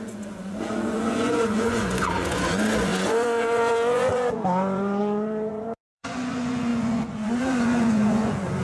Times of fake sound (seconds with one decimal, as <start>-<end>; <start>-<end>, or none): 0.0-8.6